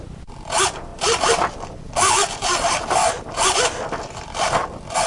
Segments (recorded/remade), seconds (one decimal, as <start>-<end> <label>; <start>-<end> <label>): 0.0-5.1 recorded